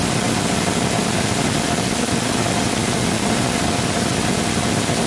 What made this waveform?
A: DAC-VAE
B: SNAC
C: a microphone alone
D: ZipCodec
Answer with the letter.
C